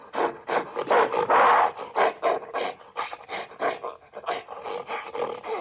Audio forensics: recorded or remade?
recorded